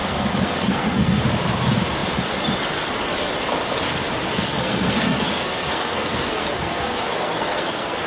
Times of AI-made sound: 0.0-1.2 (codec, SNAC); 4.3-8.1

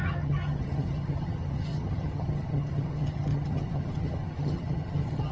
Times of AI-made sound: 0.0-5.3 (vocoder, HiFi-GAN)

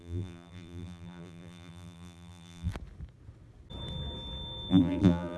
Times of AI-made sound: 0.0-2.7 (vocoder, BigVGAN v2); 4.7-5.4

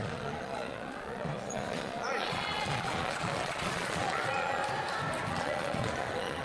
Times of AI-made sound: 0.0-4.6 (vocoder, Vocos); 5.3-6.4

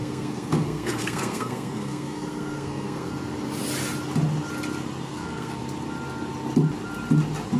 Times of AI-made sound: 0.0-3.1 (codec, SNAC); 5.1-5.6

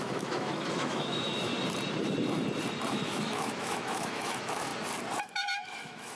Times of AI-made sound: 0.0-1.5 (autoencoder, DAC-VAE); 2.9-4.7; 5.2-6.2